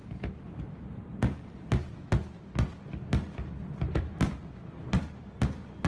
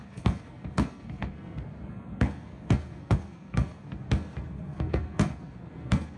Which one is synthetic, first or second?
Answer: second